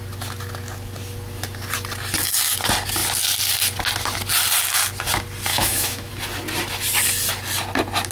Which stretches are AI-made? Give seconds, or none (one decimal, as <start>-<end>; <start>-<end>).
5.5-6.1